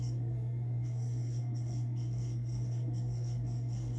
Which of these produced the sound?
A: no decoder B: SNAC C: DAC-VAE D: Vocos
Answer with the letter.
B